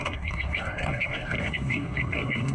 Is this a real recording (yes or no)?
no